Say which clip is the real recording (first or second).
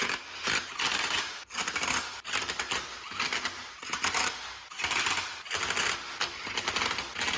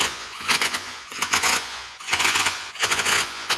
first